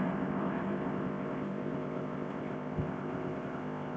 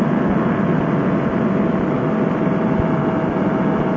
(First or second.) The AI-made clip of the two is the first